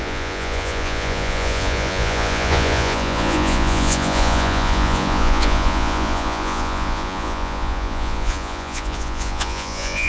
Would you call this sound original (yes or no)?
no